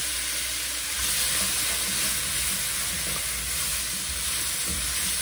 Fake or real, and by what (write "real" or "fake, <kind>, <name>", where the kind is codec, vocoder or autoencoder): real